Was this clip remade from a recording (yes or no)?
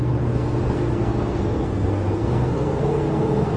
yes